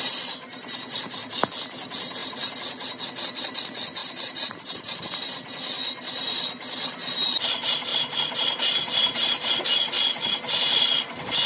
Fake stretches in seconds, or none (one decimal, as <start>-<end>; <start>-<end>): 4.0-5.0; 7.9-9.6